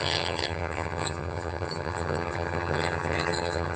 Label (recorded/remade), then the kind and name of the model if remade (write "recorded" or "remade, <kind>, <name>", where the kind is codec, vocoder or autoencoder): remade, vocoder, HiFi-GAN